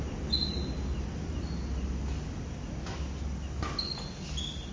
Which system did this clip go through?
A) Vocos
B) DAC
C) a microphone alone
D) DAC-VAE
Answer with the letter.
C